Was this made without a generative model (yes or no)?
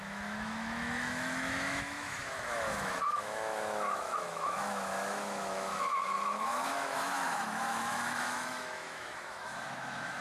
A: no